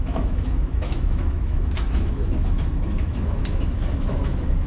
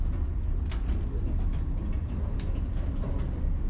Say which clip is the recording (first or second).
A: second